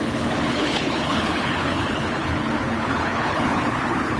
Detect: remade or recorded remade